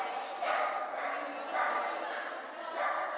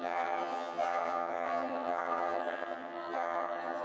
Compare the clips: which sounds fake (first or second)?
second